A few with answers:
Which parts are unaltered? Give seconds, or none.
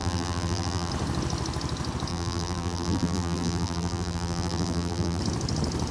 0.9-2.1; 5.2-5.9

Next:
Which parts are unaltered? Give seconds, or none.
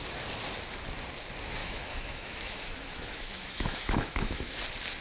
0.0-1.6; 4.6-5.0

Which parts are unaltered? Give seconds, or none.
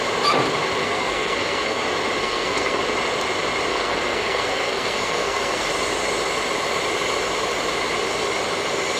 0.0-0.8; 1.8-2.2; 2.8-3.7; 5.7-9.0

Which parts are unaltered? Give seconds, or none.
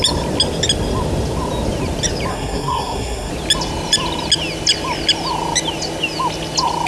0.0-2.3; 3.3-6.9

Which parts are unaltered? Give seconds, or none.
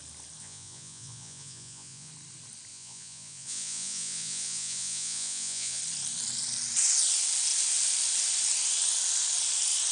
0.0-0.4; 2.1-2.7; 5.8-9.9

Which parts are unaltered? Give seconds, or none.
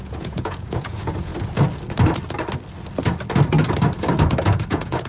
1.3-4.4